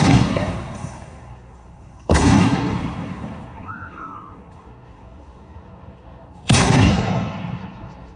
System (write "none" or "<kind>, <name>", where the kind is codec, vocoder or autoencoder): codec, SNAC